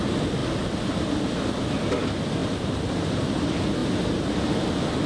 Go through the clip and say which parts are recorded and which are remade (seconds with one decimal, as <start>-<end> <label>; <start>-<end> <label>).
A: 0.0-3.8 recorded; 3.8-4.3 remade; 4.3-5.1 recorded